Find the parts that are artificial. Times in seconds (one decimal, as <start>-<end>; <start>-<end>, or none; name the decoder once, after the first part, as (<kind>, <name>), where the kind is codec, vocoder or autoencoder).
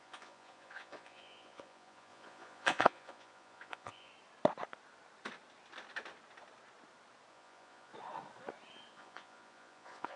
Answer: 0.0-4.1 (vocoder, Vocos); 7.3-7.9; 8.9-10.2